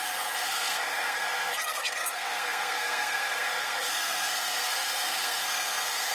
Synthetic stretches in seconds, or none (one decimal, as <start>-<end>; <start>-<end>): 0.0-6.1